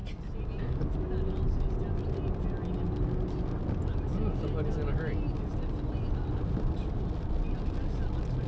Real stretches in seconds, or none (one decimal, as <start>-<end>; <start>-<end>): 0.0-8.5